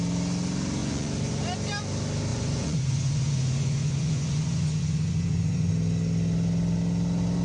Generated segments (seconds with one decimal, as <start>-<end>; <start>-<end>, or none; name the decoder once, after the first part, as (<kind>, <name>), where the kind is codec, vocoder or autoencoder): 0.8-1.4 (vocoder, Vocos); 2.3-5.7

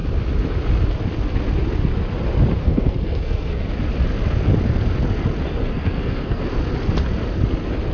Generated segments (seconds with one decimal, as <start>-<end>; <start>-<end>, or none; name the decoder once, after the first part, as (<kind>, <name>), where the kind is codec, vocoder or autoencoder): 2.6-3.7 (codec, SNAC); 5.6-6.4

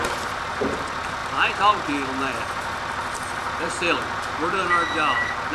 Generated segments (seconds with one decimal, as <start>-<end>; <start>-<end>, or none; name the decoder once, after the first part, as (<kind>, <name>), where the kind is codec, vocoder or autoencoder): none

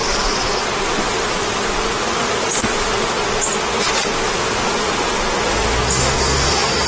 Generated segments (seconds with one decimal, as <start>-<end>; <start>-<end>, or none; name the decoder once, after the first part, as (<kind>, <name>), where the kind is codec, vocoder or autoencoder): 5.9-6.9 (codec, DAC)

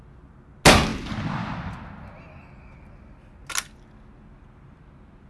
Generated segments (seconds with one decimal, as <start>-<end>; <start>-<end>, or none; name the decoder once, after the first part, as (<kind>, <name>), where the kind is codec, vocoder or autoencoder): none

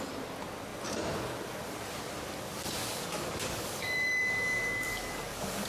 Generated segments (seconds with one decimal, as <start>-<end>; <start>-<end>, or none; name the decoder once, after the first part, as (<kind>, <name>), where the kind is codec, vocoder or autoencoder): 2.8-5.7 (codec, DAC)

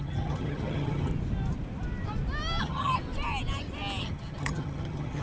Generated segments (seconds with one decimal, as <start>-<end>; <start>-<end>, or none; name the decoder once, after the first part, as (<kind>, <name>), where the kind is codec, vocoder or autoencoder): 0.0-1.1 (vocoder, HiFi-GAN); 2.6-3.0; 4.0-5.2